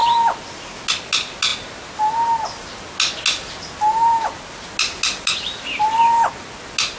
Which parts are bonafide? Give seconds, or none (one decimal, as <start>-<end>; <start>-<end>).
0.0-7.0